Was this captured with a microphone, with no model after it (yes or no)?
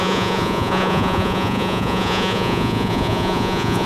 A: no